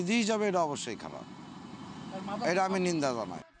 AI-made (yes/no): no